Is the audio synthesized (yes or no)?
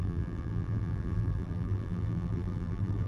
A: yes